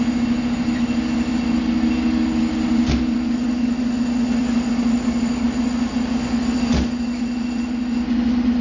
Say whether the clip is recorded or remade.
recorded